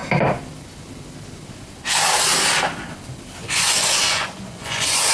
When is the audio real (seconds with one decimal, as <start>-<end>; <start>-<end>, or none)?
0.0-3.4